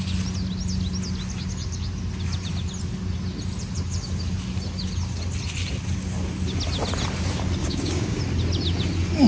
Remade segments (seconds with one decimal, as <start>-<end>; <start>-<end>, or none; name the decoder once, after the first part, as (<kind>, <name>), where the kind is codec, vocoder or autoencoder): 7.6-8.2 (codec, DAC)